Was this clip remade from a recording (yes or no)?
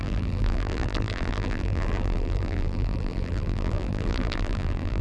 yes